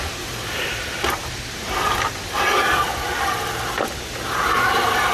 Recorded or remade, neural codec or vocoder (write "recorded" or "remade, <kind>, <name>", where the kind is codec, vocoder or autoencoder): recorded